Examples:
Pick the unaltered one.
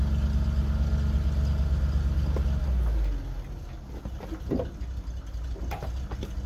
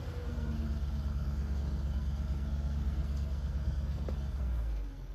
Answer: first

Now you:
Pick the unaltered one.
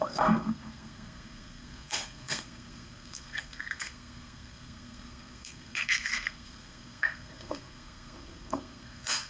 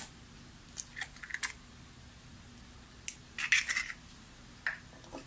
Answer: second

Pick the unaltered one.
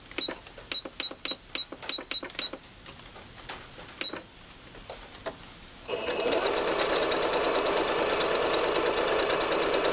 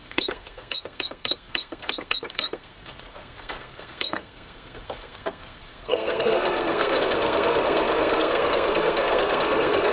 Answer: first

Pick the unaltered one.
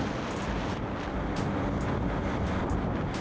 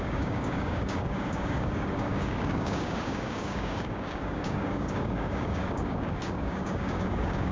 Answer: first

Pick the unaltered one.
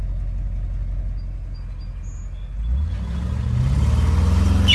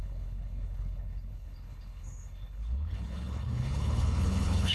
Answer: first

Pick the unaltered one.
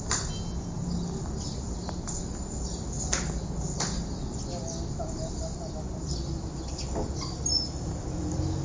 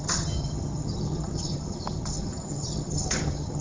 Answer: first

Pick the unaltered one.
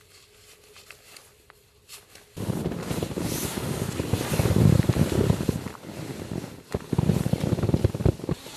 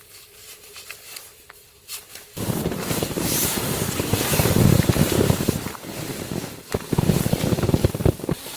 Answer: first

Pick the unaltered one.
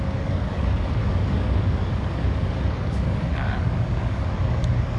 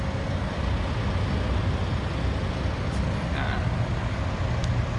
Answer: second